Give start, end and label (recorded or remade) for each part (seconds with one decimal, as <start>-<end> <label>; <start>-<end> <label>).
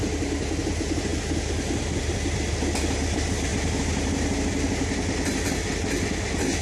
0.0-6.6 recorded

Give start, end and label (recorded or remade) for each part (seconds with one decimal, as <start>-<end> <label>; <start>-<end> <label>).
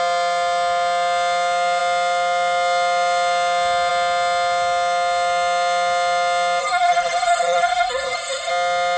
0.0-6.6 recorded; 6.6-8.5 remade; 8.5-9.0 recorded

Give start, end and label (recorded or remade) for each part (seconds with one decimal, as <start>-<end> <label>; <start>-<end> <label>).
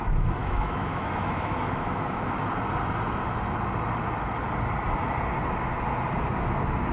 0.0-0.4 recorded; 0.4-2.4 remade; 2.4-6.9 recorded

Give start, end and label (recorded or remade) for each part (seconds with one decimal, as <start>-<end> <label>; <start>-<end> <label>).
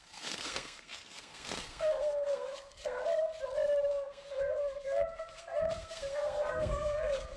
0.0-3.0 remade; 3.0-3.9 recorded; 3.9-7.4 remade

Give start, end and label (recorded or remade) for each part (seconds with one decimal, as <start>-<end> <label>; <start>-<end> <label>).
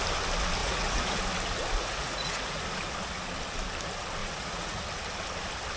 0.0-0.6 recorded; 0.6-1.2 remade; 1.2-1.8 recorded; 1.8-2.6 remade; 2.6-4.2 recorded; 4.2-4.8 remade; 4.8-5.8 recorded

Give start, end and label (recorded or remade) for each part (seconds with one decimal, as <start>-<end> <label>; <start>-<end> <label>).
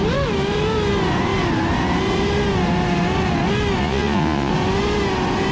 0.0-3.8 recorded; 3.8-4.5 remade; 4.5-5.5 recorded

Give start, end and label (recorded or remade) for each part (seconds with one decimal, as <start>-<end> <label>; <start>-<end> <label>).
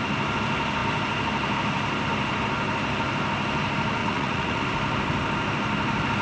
0.0-4.0 recorded; 4.0-4.6 remade; 4.6-6.2 recorded